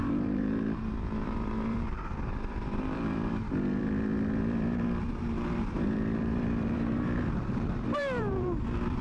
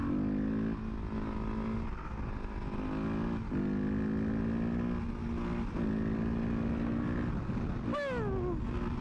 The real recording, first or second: second